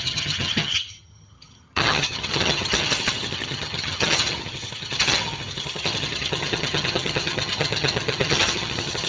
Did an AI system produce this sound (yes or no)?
yes